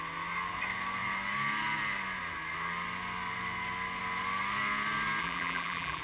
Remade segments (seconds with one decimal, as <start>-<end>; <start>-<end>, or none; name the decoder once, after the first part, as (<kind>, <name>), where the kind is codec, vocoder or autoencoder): 5.2-6.0 (vocoder, BigVGAN v2)